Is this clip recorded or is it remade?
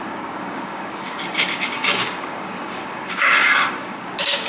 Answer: remade